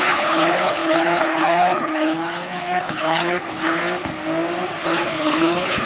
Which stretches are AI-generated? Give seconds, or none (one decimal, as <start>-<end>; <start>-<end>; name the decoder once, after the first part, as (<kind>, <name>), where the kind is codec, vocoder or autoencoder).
0.0-3.8 (codec, HILCodec); 4.8-5.9